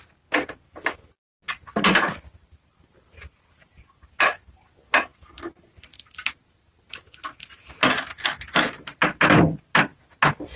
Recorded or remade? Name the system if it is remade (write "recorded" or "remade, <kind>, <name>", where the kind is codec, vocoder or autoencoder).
recorded